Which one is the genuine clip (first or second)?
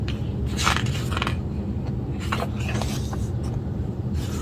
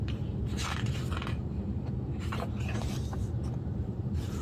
first